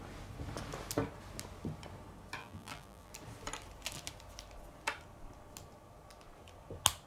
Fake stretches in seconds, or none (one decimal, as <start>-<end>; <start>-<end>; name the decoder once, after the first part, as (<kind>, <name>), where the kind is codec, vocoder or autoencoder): 2.4-3.1 (vocoder, BigVGAN v2)